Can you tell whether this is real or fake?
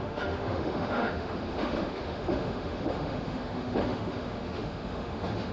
fake